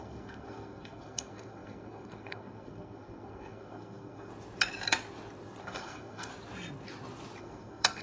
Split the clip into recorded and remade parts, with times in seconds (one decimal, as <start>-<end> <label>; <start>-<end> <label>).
0.0-4.3 remade; 4.3-5.6 recorded; 5.6-6.3 remade; 6.3-7.4 recorded; 7.4-8.0 remade